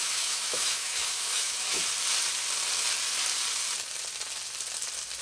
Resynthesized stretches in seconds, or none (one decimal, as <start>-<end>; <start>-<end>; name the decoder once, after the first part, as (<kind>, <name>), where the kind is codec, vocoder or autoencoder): 0.0-1.8 (autoencoder, DAC-VAE)